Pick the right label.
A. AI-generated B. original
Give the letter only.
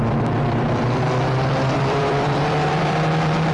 A